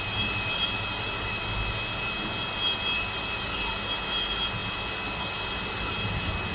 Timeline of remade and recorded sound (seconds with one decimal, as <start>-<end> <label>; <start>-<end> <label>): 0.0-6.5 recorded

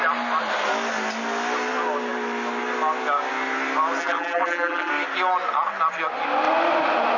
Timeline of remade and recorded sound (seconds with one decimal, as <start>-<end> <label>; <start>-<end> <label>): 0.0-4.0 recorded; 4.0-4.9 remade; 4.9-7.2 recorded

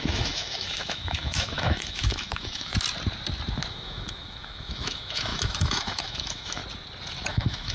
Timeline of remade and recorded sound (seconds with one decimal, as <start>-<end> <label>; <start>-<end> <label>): 0.0-2.7 remade; 2.7-3.7 recorded; 3.7-6.6 remade; 6.6-7.3 recorded; 7.3-7.7 remade